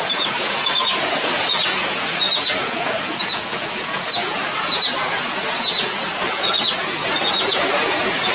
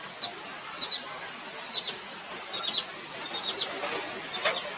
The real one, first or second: second